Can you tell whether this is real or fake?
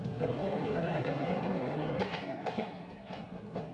fake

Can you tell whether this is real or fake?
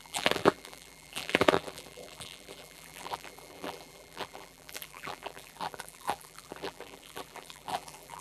fake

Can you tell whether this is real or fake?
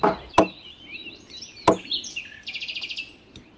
real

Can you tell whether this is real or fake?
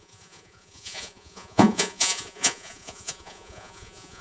fake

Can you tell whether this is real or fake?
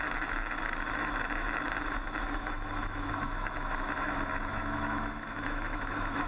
fake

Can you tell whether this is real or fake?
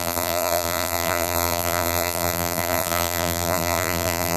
fake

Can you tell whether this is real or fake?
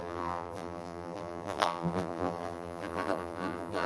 fake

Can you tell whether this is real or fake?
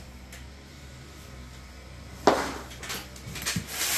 real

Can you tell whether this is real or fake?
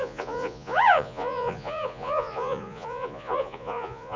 fake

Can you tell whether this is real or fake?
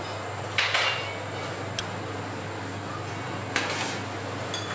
real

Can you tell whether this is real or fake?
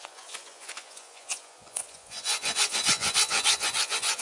fake